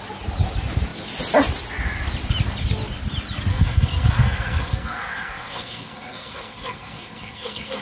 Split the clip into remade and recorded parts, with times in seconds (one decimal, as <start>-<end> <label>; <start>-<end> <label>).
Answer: 0.0-3.5 recorded; 3.5-7.8 remade

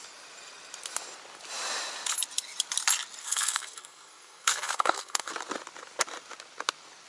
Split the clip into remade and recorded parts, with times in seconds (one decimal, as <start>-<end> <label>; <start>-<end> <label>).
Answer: 0.0-3.2 recorded; 3.2-5.3 remade; 5.3-7.1 recorded

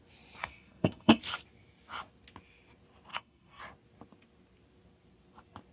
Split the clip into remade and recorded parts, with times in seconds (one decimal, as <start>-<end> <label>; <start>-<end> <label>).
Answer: 0.0-0.4 recorded; 0.4-1.2 remade; 1.2-3.1 recorded; 3.1-3.6 remade; 3.6-5.7 recorded

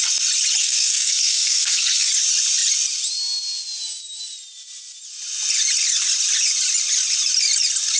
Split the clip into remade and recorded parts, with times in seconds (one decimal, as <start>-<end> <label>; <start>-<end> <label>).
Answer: 0.0-0.6 recorded; 0.6-2.1 remade; 2.1-8.0 recorded

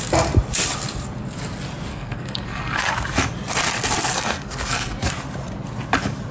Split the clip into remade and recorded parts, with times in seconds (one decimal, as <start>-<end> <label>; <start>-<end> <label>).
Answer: 0.0-1.9 recorded; 1.9-2.9 remade; 2.9-4.1 recorded; 4.1-5.1 remade; 5.1-6.3 recorded